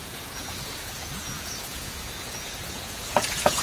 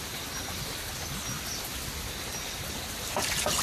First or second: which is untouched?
second